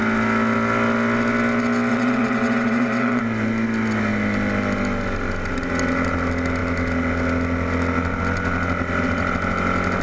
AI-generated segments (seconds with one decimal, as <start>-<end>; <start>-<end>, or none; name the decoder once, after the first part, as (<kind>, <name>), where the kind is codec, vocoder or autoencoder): 1.9-3.2 (vocoder, WaveNeXt)